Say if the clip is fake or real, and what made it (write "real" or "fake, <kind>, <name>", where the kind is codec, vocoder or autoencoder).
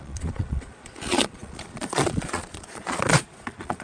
fake, vocoder, Vocos